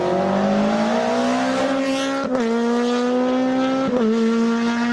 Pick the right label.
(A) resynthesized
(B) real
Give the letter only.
B